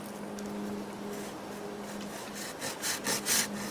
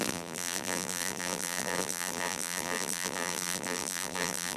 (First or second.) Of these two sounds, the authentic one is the first